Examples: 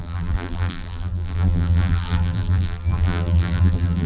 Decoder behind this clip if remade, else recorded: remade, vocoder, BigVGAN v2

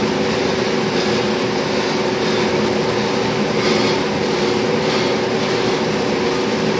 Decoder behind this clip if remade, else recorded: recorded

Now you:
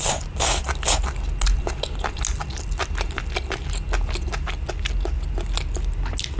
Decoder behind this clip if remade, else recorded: recorded